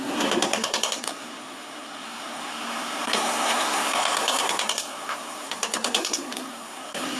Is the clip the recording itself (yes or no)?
no